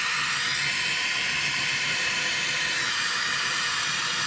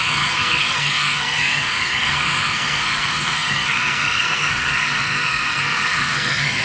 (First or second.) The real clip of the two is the first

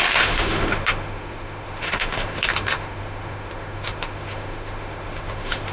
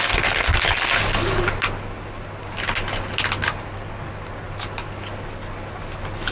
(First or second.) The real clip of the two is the second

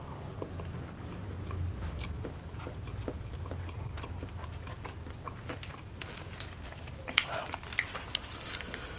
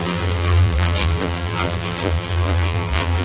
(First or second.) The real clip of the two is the first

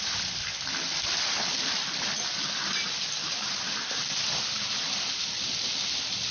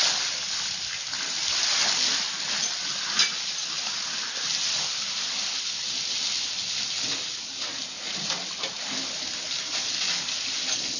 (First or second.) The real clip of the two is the second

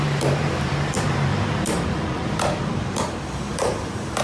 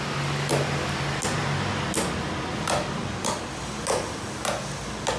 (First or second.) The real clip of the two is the second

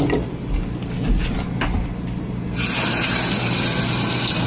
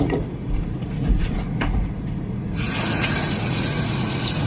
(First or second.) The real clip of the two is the first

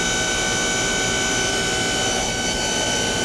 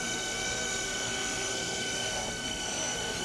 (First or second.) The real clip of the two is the first